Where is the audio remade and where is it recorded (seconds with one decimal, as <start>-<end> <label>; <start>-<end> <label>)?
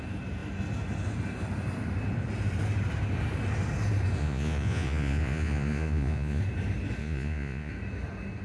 0.0-4.2 recorded; 4.2-6.4 remade; 6.4-7.0 recorded; 7.0-7.7 remade; 7.7-8.4 recorded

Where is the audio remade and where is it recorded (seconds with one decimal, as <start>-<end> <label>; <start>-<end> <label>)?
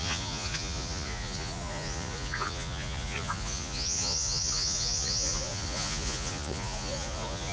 0.0-7.5 remade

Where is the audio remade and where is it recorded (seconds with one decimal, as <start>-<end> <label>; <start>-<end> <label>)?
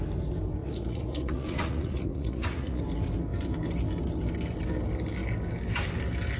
0.0-0.6 recorded; 0.6-2.8 remade; 2.8-6.4 recorded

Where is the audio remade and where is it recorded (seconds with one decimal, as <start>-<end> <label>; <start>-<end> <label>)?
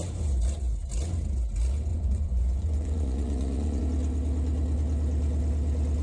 0.0-1.9 recorded; 1.9-3.8 remade; 3.8-6.0 recorded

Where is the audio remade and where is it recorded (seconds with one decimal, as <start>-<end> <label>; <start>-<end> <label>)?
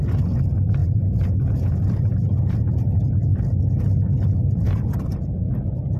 0.0-0.8 recorded; 0.8-1.8 remade; 1.8-6.0 recorded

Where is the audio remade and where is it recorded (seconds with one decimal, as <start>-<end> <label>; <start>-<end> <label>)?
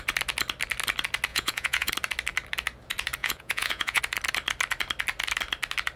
0.0-1.3 recorded; 1.3-1.9 remade; 1.9-3.2 recorded; 3.2-4.0 remade; 4.0-6.0 recorded